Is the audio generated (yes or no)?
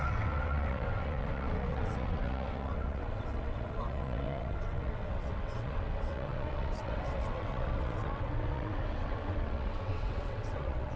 yes